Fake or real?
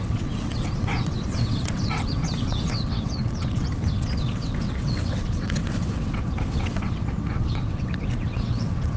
fake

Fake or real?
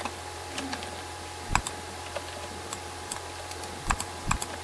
real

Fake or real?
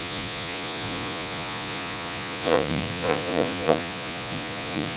fake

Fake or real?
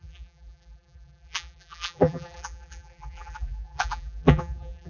fake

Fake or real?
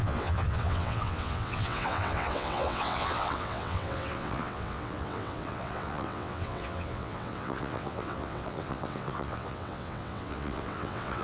fake